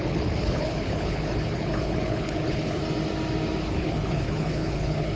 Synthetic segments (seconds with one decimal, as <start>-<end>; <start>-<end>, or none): 0.0-2.8; 3.6-5.2